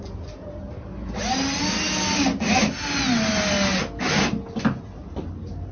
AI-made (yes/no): no